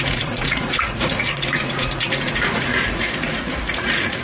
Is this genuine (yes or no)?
no